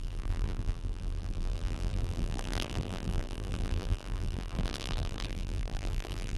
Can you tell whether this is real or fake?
fake